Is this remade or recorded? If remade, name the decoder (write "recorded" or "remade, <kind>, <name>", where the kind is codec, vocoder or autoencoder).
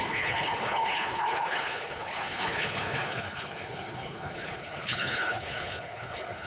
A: remade, codec, HILCodec